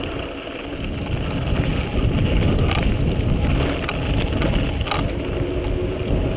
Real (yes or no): yes